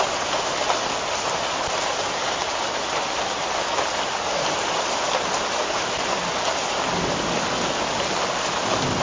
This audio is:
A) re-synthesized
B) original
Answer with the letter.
B